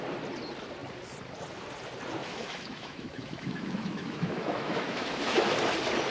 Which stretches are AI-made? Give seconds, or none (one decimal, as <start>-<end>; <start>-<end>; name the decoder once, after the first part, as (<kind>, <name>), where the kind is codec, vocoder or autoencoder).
2.2-5.5 (autoencoder, DAC-VAE)